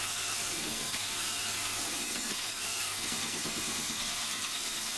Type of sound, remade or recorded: remade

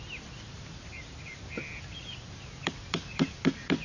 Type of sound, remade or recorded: recorded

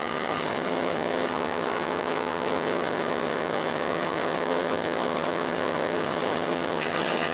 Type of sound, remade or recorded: remade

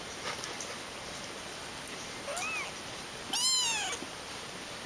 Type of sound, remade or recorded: recorded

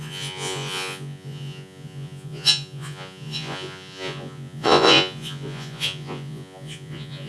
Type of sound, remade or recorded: remade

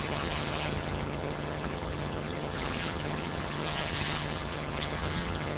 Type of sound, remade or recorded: remade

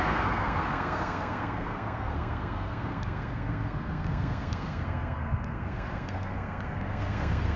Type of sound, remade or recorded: remade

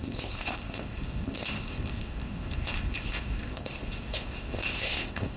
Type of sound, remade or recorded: remade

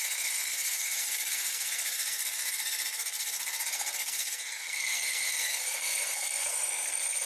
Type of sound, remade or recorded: remade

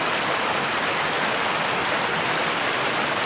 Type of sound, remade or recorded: recorded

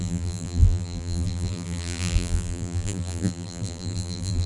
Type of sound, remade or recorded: remade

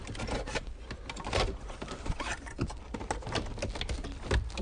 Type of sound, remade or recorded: recorded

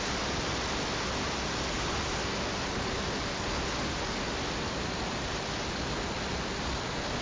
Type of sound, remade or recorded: recorded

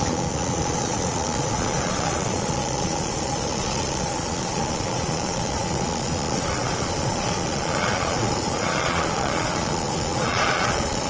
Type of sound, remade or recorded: remade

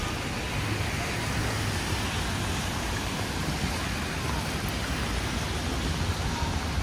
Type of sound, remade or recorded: recorded